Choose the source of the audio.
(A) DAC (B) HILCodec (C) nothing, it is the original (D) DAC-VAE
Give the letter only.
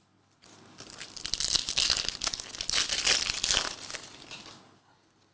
C